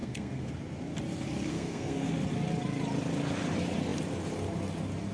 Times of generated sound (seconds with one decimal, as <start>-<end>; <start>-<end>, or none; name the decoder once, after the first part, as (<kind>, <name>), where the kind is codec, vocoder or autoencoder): 0.0-0.5 (codec, SNAC); 1.5-2.1